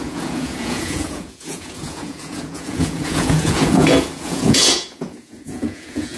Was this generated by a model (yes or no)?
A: yes